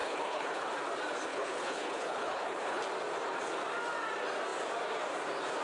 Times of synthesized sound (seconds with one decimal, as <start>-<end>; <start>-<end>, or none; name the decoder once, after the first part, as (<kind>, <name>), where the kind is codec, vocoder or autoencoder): 0.0-0.7 (codec, HILCodec); 1.3-2.8